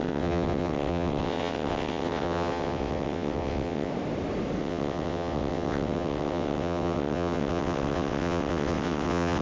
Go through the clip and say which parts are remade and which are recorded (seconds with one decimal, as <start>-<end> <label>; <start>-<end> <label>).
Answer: 0.0-3.9 remade; 3.9-4.6 recorded; 4.6-9.4 remade